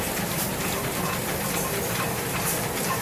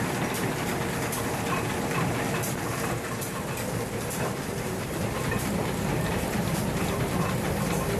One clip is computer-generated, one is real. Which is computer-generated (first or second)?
second